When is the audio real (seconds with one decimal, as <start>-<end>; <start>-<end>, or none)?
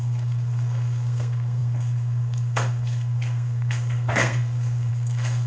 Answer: none